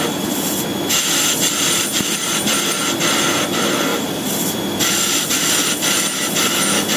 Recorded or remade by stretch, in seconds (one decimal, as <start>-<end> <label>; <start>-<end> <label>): 0.0-3.9 recorded; 3.9-5.3 remade; 5.3-7.0 recorded